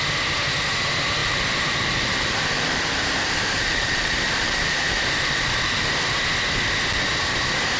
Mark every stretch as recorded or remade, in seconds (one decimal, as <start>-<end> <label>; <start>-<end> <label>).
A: 0.0-1.2 recorded; 1.2-5.9 remade; 5.9-7.8 recorded